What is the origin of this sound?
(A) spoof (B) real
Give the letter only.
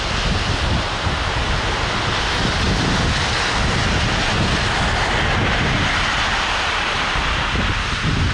B